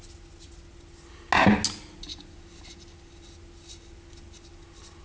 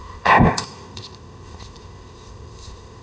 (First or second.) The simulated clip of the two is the second